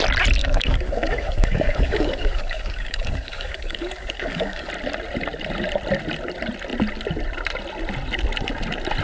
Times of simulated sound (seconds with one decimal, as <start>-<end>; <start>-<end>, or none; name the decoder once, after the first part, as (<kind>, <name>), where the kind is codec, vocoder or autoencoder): 0.4-4.7 (codec, DAC)